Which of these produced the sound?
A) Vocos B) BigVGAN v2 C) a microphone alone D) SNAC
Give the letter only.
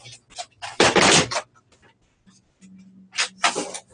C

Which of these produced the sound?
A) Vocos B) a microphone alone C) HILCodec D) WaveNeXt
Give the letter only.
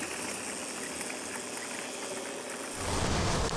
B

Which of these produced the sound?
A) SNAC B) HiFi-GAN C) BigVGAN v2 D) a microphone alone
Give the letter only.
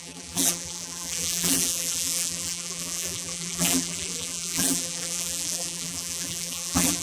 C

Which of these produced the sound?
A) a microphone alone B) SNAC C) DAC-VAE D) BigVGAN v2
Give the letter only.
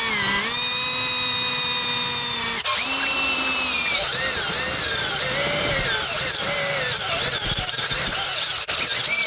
A